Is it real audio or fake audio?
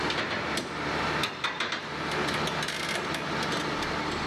real